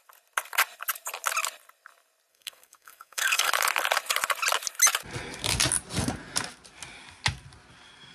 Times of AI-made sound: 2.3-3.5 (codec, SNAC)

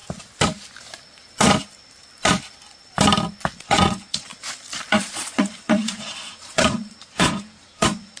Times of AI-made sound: 3.6-4.3 (vocoder, Vocos); 5.0-8.2

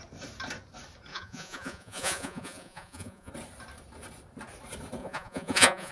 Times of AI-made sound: 1.1-3.3 (vocoder, Vocos); 5.0-5.9

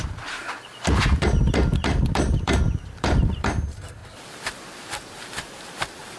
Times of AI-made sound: 0.0-4.0 (vocoder, BigVGAN v2); 5.2-6.2